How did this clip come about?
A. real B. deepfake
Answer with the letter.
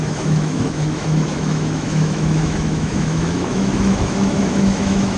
B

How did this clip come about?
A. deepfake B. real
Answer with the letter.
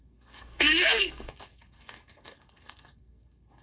A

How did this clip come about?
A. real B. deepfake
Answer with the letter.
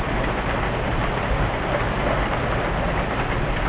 A